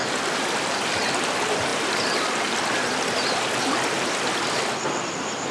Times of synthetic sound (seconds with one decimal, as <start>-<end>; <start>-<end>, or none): none